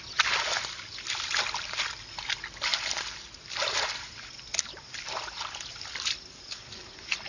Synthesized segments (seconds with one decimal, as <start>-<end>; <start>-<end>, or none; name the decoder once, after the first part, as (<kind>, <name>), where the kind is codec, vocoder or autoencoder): none

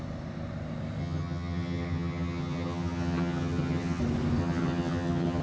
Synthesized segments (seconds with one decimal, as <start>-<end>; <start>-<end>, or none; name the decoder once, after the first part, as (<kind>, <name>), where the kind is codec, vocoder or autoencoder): 1.0-4.0 (vocoder, HiFi-GAN); 4.4-5.4

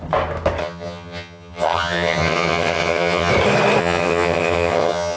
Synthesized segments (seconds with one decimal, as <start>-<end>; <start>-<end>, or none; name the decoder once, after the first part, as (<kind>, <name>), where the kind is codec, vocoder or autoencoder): 0.6-3.3 (vocoder, HiFi-GAN); 3.8-5.2

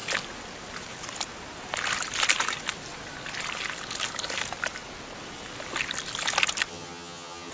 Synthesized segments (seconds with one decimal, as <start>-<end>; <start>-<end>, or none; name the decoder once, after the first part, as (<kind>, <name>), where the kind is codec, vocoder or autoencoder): 6.7-7.5 (vocoder, HiFi-GAN)

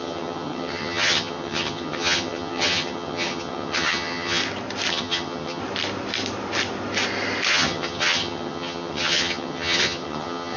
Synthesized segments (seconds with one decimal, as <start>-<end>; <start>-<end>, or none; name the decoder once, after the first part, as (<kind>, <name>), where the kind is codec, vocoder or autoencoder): 0.0-4.4 (vocoder, HiFi-GAN); 4.9-5.6; 7.5-10.6

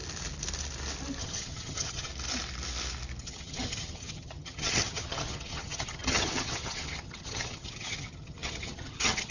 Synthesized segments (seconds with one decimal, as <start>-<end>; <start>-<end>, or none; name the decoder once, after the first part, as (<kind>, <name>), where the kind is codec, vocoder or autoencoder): 1.2-2.1 (vocoder, HiFi-GAN); 3.2-9.3

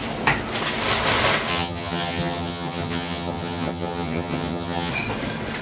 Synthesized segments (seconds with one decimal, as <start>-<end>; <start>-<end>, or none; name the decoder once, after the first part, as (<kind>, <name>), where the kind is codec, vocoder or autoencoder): 1.5-4.9 (vocoder, HiFi-GAN)